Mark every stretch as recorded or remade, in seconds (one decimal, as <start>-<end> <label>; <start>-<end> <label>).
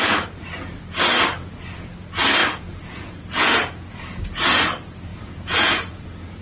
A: 0.0-2.4 recorded; 2.4-4.2 remade; 4.2-5.1 recorded; 5.1-6.0 remade; 6.0-6.4 recorded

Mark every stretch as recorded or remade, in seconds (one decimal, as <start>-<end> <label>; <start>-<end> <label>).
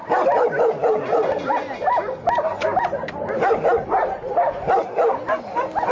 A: 0.0-5.9 recorded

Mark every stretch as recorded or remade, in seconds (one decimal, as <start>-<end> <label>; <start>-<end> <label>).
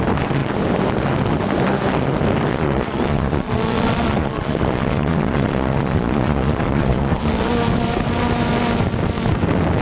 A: 0.0-2.5 recorded; 2.5-7.5 remade; 7.5-9.8 recorded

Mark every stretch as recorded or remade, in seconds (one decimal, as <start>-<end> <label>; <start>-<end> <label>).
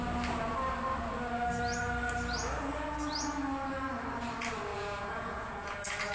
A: 0.0-4.7 recorded; 4.7-6.1 remade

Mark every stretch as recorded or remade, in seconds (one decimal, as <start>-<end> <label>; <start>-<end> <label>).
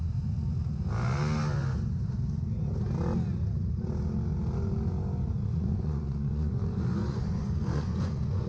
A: 0.0-5.5 recorded; 5.5-6.5 remade; 6.5-7.0 recorded; 7.0-8.5 remade